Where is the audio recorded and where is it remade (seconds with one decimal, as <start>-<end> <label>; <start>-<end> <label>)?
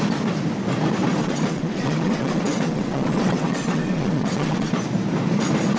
0.0-1.2 recorded; 1.2-4.7 remade; 4.7-5.8 recorded